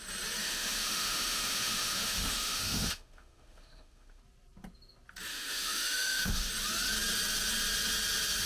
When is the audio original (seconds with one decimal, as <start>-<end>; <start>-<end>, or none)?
0.0-0.4; 4.2-5.3; 6.5-8.5